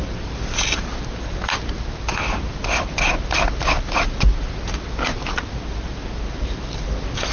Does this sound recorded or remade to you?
recorded